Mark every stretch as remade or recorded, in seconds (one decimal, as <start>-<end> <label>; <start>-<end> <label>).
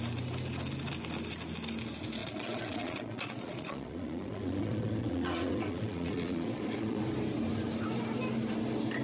0.0-2.2 recorded; 2.2-7.0 remade; 7.0-9.0 recorded